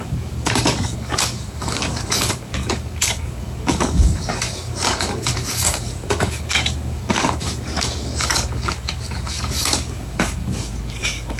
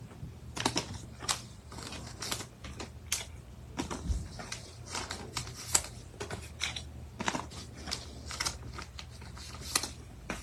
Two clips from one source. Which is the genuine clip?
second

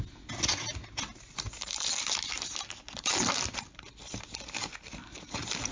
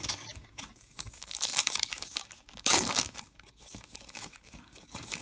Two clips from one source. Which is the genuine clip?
first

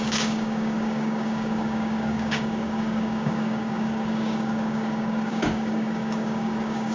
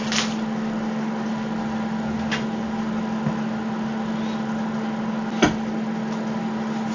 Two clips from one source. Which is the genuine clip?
second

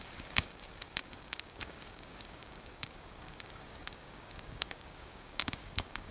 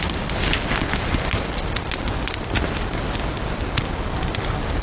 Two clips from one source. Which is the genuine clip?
second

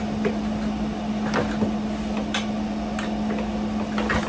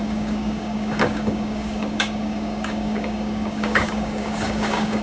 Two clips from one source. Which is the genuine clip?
first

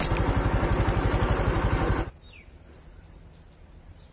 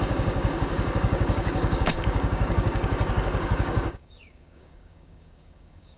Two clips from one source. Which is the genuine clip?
first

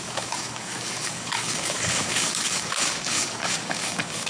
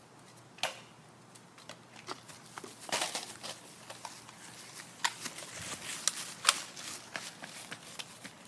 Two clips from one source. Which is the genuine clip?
second